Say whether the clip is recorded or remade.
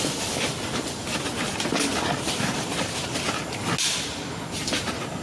recorded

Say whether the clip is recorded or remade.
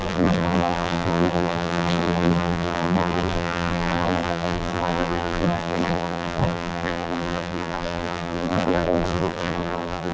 remade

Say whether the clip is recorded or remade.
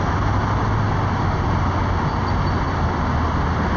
recorded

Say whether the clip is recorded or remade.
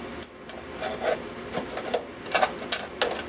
recorded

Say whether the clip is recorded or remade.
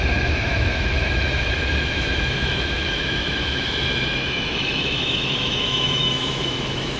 remade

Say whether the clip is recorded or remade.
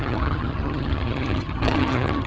remade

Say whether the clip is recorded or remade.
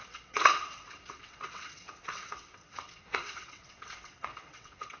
remade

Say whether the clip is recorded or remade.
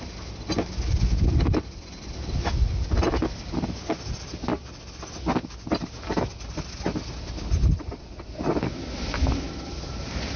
recorded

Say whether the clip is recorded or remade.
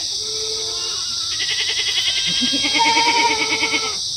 recorded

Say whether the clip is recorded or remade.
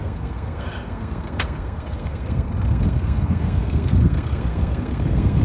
remade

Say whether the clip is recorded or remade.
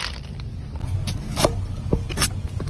recorded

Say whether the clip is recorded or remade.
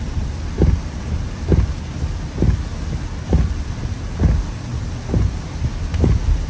recorded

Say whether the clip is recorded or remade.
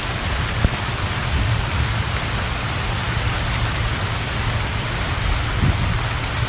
recorded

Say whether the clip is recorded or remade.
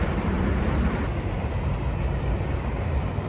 recorded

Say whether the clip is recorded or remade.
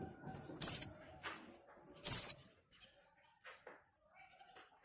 remade